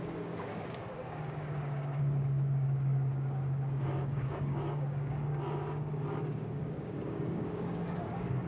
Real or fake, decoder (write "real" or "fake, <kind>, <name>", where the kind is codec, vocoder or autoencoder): fake, codec, DAC